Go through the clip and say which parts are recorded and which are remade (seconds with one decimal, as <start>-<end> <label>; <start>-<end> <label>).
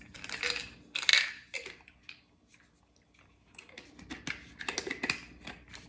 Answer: 0.0-5.9 recorded